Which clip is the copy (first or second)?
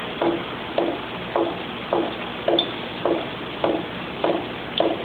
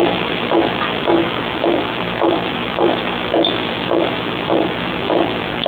second